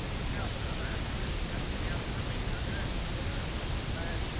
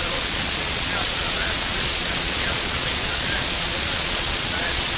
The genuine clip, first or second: first